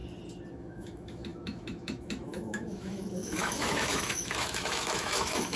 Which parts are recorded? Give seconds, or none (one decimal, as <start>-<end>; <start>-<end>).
0.0-0.5